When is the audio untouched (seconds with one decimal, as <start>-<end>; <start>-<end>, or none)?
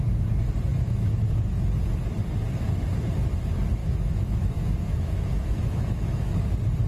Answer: 0.0-0.7; 1.5-3.8; 6.5-6.9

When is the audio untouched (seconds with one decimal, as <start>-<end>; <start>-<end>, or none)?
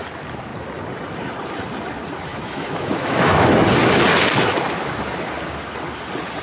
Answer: 0.0-2.3; 3.5-6.4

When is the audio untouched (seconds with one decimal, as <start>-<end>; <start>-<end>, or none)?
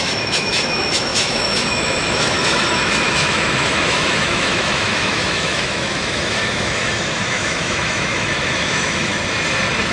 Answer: 9.1-9.9